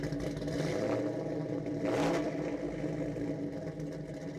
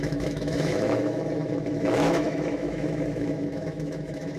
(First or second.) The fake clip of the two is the second